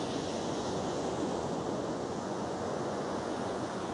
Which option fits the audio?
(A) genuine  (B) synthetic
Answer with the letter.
B